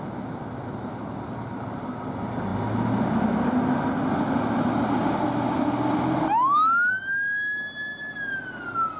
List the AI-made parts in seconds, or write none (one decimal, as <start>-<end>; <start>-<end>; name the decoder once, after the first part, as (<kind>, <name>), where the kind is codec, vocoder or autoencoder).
none